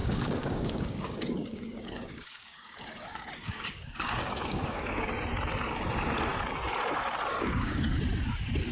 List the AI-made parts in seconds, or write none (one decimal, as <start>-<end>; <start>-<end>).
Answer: 0.0-5.1; 7.3-7.9